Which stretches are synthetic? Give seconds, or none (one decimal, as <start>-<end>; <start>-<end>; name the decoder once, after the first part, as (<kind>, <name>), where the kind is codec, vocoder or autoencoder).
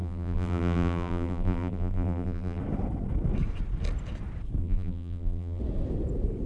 0.0-2.6 (vocoder, BigVGAN v2); 4.6-5.6